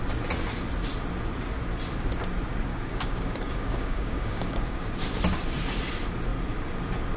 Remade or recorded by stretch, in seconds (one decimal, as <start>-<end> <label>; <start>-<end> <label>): 0.0-2.7 recorded; 2.7-4.9 remade; 4.9-7.2 recorded